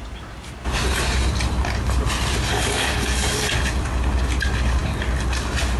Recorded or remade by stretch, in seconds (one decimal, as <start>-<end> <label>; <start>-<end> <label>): 0.0-2.5 recorded; 2.5-3.4 remade; 3.4-5.8 recorded